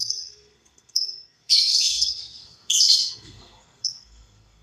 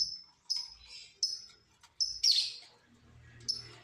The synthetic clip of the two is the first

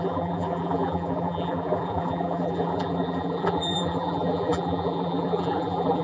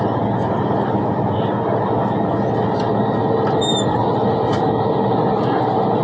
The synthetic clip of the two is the first